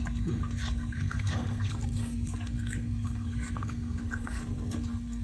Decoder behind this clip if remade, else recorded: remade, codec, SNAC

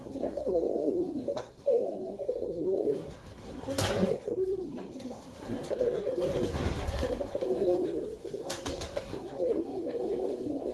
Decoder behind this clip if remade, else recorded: remade, codec, SNAC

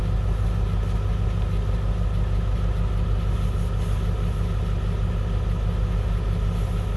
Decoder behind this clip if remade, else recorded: recorded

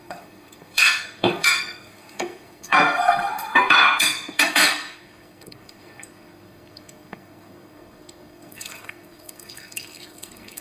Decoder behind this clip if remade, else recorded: remade, codec, SNAC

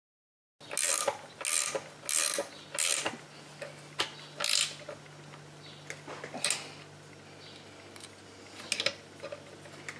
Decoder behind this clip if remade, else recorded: recorded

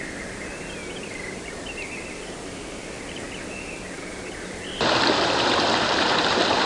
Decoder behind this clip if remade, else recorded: recorded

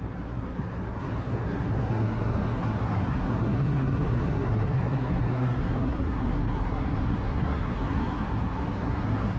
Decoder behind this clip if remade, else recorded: remade, codec, SNAC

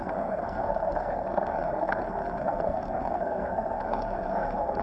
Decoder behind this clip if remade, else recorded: remade, codec, SNAC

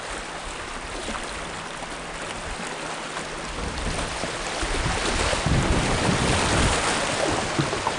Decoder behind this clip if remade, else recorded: recorded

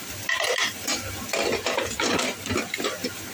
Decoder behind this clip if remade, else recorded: recorded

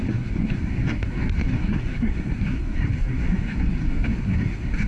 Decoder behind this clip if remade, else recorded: remade, codec, SNAC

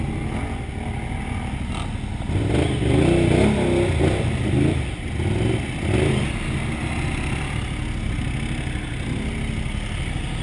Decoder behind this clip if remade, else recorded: recorded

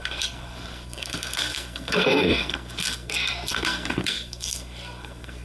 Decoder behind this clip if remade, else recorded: remade, codec, SNAC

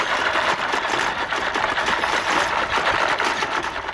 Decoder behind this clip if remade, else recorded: recorded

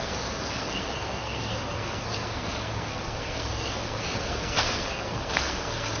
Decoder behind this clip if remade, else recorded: remade, codec, SNAC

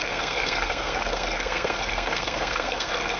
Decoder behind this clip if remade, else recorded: remade, codec, SNAC